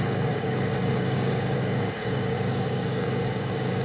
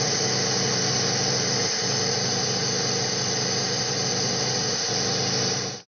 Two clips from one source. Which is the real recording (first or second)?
second